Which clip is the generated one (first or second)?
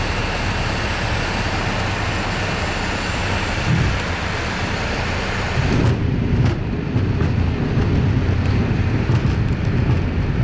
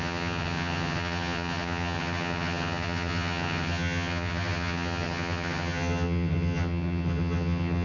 second